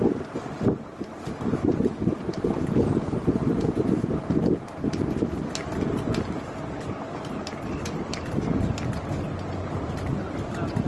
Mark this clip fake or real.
real